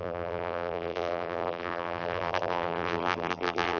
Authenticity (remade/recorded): remade